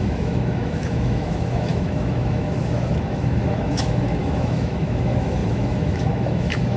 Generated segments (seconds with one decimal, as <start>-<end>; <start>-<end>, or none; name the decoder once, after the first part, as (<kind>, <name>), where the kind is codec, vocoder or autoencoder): 0.0-6.8 (autoencoder, DAC-VAE)